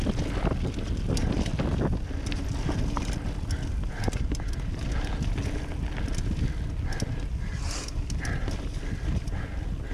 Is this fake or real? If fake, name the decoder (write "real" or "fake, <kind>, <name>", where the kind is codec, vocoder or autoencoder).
real